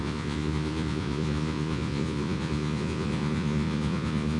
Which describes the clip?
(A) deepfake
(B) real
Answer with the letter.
A